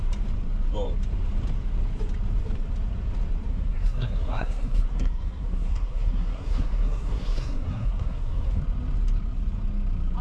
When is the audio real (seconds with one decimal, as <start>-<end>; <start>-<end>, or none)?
0.0-3.5; 8.6-10.2

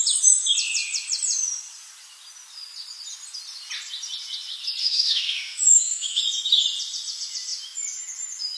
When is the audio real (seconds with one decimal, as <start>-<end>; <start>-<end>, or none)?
0.0-4.8; 6.2-8.6

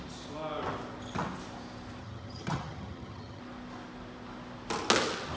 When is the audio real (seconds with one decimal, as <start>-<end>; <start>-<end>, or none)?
0.0-2.0; 3.4-5.4

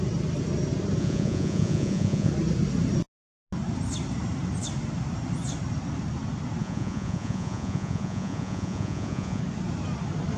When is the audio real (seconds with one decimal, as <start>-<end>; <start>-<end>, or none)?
0.0-1.0; 2.3-6.6; 9.4-10.4